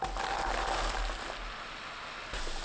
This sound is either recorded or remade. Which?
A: recorded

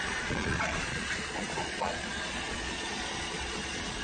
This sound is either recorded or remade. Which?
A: remade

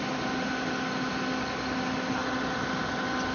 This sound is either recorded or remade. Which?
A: recorded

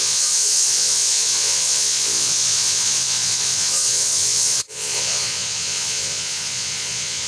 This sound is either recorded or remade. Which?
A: remade